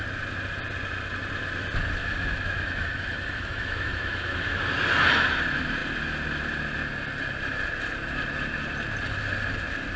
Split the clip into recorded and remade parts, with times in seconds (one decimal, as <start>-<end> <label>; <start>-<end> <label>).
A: 0.0-2.0 recorded; 2.0-4.7 remade; 4.7-10.0 recorded